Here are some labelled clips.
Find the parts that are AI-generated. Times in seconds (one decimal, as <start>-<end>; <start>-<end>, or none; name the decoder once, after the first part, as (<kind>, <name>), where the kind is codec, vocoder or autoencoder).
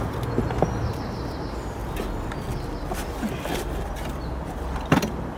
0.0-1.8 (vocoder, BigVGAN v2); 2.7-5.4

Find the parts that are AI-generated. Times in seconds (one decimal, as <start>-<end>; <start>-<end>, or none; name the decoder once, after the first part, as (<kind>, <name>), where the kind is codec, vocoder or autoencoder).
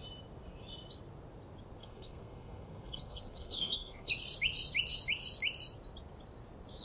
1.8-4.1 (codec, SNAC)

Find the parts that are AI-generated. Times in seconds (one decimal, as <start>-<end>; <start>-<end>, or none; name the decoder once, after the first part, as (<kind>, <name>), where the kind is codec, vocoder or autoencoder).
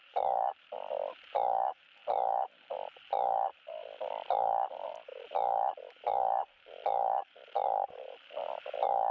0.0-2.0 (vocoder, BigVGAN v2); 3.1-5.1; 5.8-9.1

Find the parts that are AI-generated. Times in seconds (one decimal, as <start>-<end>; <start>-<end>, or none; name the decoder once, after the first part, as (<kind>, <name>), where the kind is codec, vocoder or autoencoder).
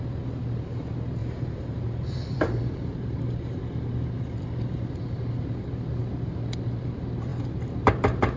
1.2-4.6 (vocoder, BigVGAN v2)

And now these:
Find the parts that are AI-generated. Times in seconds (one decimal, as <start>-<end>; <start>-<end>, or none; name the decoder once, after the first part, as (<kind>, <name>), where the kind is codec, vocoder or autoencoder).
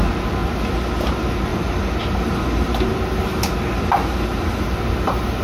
none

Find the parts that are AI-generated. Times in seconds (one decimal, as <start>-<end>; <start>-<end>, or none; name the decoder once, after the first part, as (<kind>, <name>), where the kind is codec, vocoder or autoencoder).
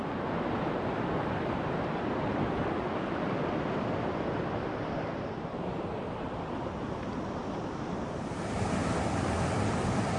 none